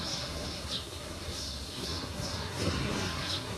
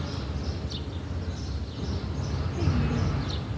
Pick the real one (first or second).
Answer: second